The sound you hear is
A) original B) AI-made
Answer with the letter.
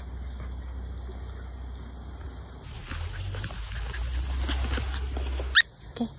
A